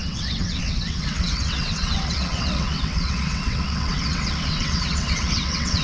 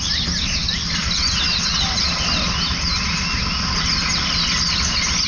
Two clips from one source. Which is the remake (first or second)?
first